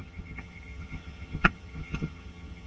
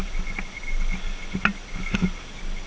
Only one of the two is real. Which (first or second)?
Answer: second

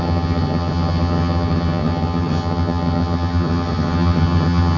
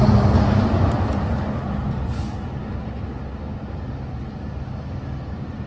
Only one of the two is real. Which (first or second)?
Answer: second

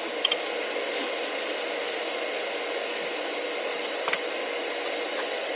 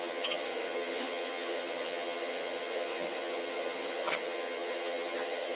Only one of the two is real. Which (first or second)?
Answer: first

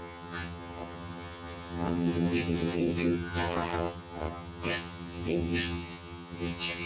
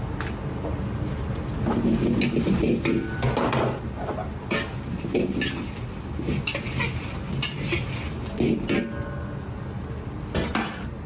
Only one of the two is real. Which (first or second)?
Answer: second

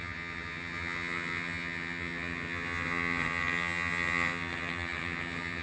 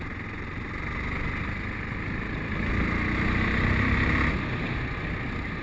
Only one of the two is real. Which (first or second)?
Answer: second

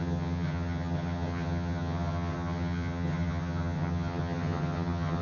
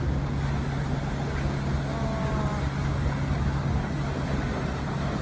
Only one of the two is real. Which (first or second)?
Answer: second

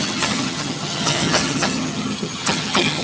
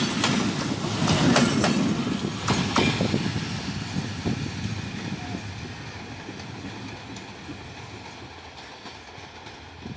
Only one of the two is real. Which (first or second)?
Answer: second